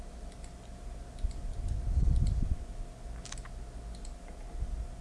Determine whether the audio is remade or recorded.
recorded